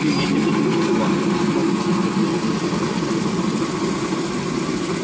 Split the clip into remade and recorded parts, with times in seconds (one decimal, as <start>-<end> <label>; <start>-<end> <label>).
0.0-5.0 recorded